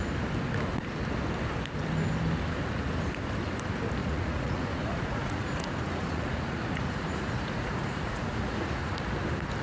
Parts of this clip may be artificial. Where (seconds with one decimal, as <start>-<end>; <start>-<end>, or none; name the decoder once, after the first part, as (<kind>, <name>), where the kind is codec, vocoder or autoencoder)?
4.0-9.0 (vocoder, Vocos)